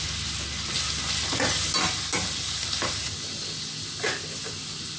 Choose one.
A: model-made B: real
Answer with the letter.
B